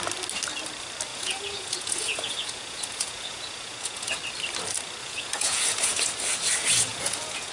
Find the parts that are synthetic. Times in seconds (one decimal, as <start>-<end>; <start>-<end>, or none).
1.1-4.1; 5.0-6.0; 6.9-7.5